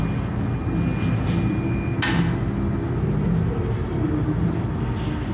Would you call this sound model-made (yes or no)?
no